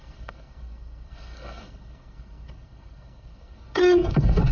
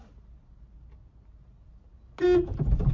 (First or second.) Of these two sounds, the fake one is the first